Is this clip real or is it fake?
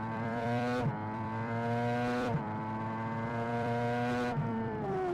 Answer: fake